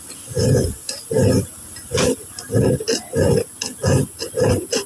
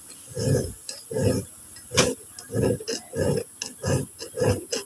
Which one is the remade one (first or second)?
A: first